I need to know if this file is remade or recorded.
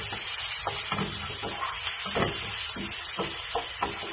recorded